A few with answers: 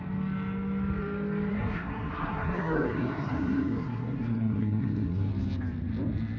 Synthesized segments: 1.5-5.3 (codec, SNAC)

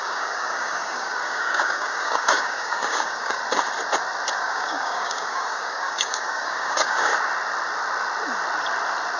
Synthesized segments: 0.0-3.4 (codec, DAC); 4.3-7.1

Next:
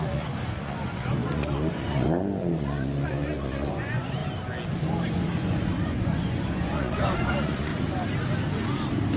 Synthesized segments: 0.0-4.2 (vocoder, Vocos); 5.1-7.7

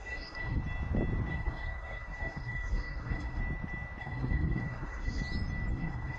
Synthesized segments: 0.0-0.6 (codec, SNAC); 1.3-3.4; 4.0-5.2; 5.7-6.2

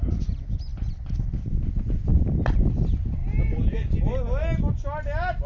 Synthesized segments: none

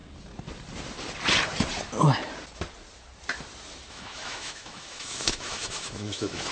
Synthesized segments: 3.9-6.5 (autoencoder, DAC-VAE)

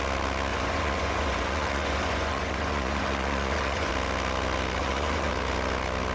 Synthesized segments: 0.5-3.9 (vocoder, Vocos); 4.8-5.3